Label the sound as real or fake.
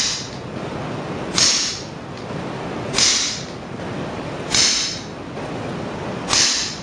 real